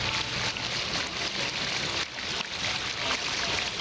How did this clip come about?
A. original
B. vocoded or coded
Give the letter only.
A